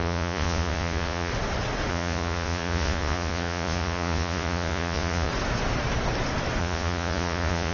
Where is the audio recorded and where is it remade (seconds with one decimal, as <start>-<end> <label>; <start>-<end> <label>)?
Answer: 0.0-1.3 remade; 1.3-1.9 recorded; 1.9-5.3 remade; 5.3-6.6 recorded; 6.6-7.7 remade